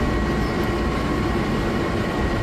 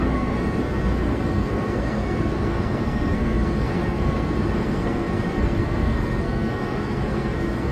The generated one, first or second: second